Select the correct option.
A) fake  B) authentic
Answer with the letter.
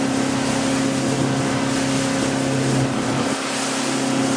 B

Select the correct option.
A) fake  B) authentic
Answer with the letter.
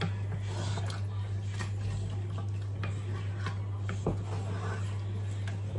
B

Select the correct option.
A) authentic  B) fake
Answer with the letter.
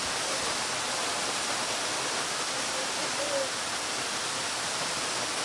A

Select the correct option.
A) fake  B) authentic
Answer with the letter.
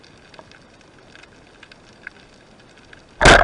B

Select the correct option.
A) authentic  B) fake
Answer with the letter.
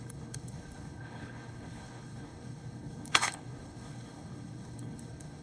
B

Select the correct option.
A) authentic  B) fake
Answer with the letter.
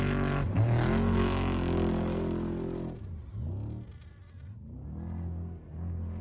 A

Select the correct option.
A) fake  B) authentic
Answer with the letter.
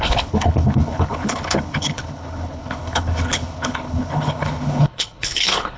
A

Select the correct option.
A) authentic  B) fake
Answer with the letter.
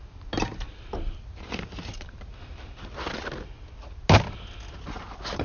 A